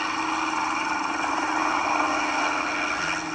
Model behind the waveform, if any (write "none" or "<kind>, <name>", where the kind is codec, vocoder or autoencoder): none